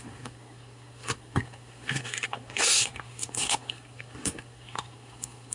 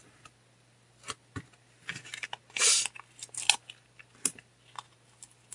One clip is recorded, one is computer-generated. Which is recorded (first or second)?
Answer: second